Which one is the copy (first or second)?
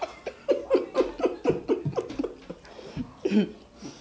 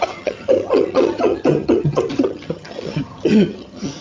second